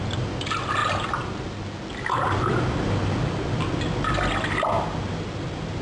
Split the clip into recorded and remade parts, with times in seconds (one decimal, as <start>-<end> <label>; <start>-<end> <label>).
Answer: 0.0-5.8 recorded